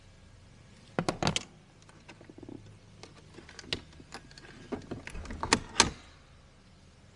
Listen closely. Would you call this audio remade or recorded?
recorded